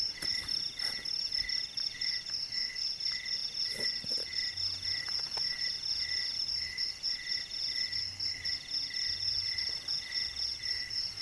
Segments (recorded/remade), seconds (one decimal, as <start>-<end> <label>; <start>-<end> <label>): 0.0-11.2 recorded